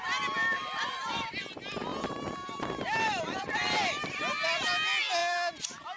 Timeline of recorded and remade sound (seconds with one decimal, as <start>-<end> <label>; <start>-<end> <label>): 0.0-1.9 recorded; 1.9-4.2 remade; 4.2-6.0 recorded